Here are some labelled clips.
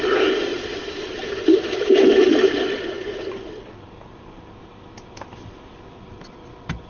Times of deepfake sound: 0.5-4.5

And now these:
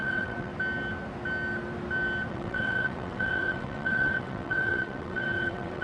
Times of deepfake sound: 0.0-0.5; 2.3-5.8